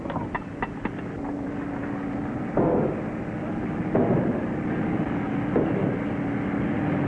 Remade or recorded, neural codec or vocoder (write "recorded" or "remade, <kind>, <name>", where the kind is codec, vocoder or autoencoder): recorded